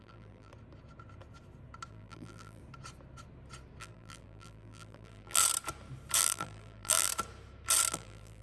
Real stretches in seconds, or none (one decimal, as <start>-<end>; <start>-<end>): 0.5-1.9; 2.6-3.8; 5.4-6.2; 7.1-7.9